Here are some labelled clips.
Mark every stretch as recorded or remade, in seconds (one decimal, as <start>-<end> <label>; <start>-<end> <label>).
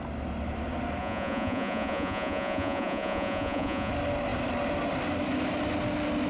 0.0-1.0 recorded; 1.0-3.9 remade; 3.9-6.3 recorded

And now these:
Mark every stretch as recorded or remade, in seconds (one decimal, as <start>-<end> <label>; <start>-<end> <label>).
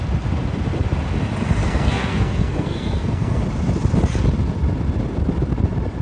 0.0-1.6 recorded; 1.6-3.4 remade; 3.4-6.0 recorded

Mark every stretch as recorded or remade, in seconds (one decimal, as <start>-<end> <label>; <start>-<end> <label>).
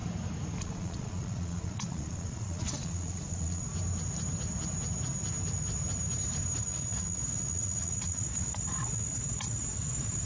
0.0-0.6 recorded; 0.6-3.7 remade; 3.7-6.6 recorded; 6.6-10.3 remade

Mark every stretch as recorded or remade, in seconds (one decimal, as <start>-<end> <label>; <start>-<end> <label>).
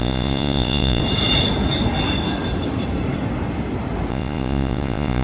0.0-1.0 remade; 1.0-4.1 recorded; 4.1-5.2 remade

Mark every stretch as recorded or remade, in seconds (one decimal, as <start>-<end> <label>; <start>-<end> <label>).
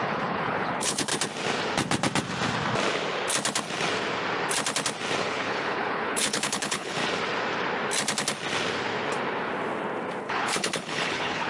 0.0-1.1 remade; 1.1-5.2 recorded; 5.2-7.0 remade; 7.0-10.2 recorded; 10.2-11.5 remade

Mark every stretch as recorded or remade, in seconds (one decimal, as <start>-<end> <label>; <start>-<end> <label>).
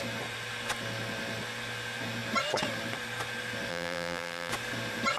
0.0-3.7 recorded; 3.7-4.5 remade; 4.5-5.2 recorded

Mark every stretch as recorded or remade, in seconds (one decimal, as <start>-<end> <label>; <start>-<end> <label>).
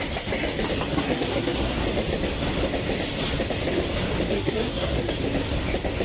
0.0-0.9 recorded; 0.9-1.8 remade; 1.8-4.3 recorded; 4.3-5.1 remade; 5.1-6.0 recorded